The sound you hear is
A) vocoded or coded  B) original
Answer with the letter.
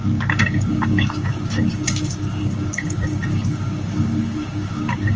A